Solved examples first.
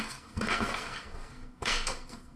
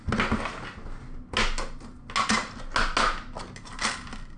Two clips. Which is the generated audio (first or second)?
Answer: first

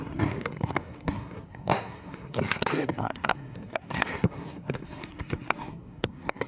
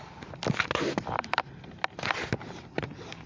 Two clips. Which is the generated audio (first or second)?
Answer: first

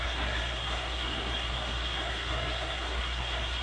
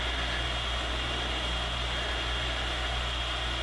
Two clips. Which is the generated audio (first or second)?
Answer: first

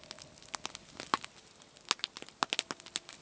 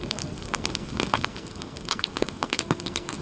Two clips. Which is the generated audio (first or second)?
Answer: second